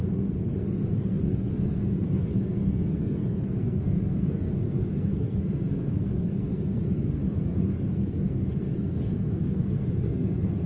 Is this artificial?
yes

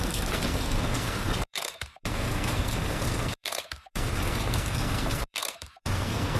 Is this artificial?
yes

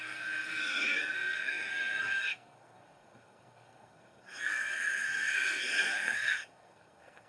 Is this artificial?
yes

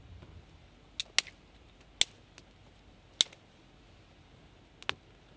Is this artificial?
no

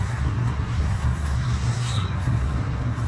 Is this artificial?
yes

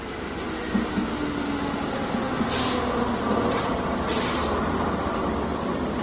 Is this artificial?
no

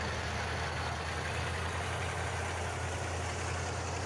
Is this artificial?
no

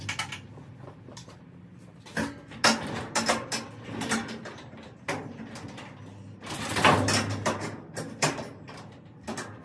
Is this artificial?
no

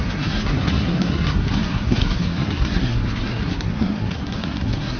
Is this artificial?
yes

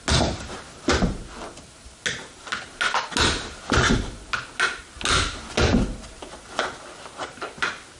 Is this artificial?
no